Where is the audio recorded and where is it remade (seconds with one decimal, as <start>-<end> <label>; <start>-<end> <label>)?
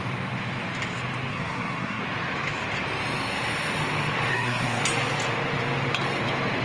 0.0-1.3 recorded; 1.3-2.0 remade; 2.0-4.3 recorded; 4.3-4.8 remade; 4.8-6.6 recorded